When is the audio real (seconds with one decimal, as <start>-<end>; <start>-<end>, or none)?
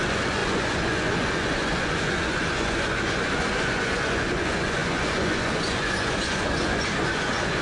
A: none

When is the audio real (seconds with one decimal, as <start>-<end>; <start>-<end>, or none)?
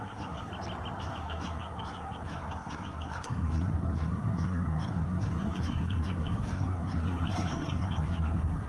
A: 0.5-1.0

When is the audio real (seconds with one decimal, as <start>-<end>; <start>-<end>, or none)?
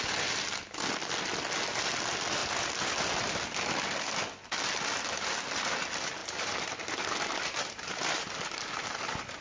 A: 0.0-6.2; 9.0-9.4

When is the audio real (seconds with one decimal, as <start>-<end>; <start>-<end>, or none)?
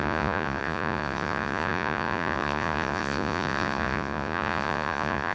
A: none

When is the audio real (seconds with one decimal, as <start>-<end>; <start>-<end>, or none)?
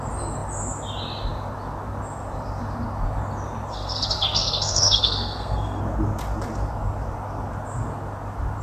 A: 0.0-3.7; 5.8-8.6